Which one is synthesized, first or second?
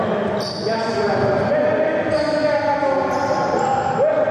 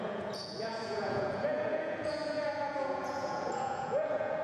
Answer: second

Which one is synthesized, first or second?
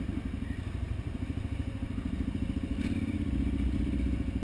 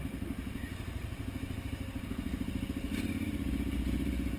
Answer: first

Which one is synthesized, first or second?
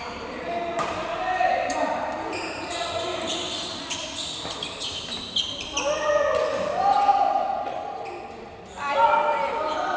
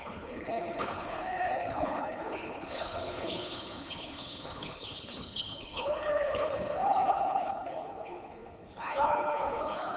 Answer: second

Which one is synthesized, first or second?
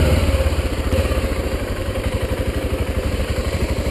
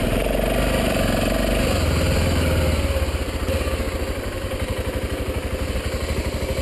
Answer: first